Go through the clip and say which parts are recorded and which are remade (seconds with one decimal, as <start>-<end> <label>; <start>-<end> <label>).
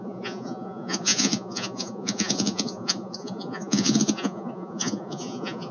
0.0-5.7 remade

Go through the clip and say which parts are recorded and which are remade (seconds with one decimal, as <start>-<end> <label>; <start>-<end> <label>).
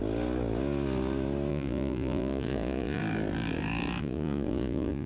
0.0-1.5 recorded; 1.5-3.0 remade; 3.0-4.0 recorded; 4.0-5.1 remade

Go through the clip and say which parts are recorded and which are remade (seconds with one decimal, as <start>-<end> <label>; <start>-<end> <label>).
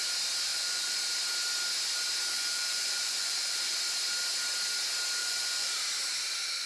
0.0-0.5 recorded; 0.5-1.0 remade; 1.0-2.3 recorded; 2.3-3.8 remade; 3.8-5.2 recorded; 5.2-5.7 remade; 5.7-6.7 recorded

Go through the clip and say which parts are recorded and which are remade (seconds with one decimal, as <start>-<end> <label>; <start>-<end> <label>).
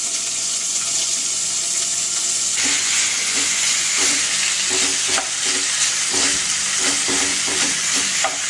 0.0-4.3 remade; 4.3-7.3 recorded; 7.3-7.9 remade; 7.9-8.5 recorded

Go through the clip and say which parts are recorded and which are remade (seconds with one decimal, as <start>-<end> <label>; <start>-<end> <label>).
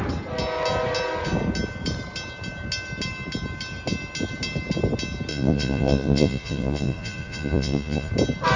0.0-5.3 recorded; 5.3-8.1 remade; 8.1-8.6 recorded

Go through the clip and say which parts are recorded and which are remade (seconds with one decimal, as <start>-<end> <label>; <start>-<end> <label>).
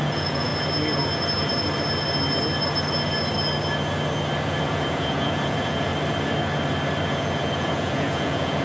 0.0-0.5 remade; 0.5-4.6 recorded; 4.6-5.9 remade; 5.9-7.1 recorded; 7.1-8.6 remade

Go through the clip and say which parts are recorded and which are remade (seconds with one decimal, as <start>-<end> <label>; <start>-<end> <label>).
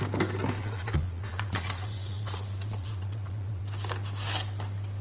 0.0-0.6 recorded; 0.6-3.6 remade; 3.6-5.0 recorded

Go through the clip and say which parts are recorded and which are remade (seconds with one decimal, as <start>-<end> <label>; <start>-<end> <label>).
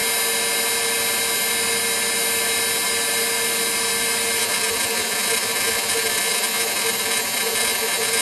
0.0-4.4 recorded; 4.4-8.2 remade